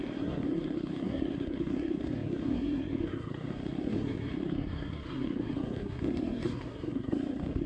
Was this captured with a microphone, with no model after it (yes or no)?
no